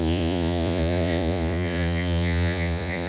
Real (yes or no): no